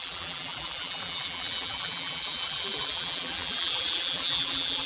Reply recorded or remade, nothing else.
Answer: remade